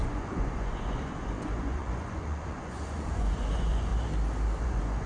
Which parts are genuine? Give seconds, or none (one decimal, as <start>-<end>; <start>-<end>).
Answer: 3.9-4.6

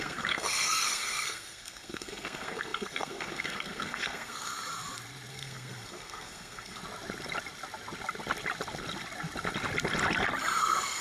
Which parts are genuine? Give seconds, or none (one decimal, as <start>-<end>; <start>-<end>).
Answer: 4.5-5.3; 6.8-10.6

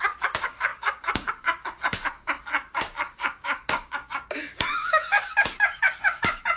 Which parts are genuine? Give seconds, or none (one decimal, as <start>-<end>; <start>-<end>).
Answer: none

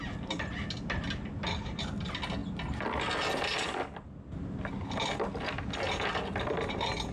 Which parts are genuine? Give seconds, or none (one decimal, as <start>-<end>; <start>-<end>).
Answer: 0.0-7.1